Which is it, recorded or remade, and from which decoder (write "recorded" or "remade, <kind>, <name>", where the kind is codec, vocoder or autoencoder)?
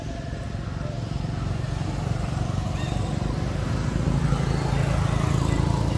recorded